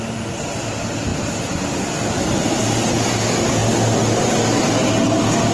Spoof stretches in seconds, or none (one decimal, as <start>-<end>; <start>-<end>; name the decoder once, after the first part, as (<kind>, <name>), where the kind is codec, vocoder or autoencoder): none